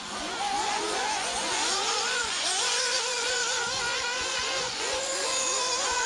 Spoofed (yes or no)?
yes